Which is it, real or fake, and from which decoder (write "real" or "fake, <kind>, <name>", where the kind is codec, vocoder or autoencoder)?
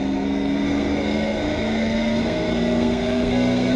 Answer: fake, codec, SNAC